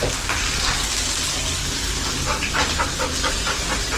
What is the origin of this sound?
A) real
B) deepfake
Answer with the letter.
A